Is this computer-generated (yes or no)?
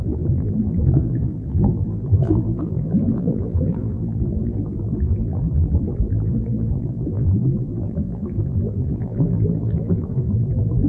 yes